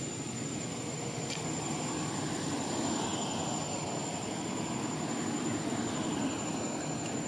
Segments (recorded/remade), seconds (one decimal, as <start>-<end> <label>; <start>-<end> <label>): 0.0-7.3 recorded